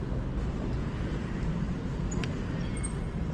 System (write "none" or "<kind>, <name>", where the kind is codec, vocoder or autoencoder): none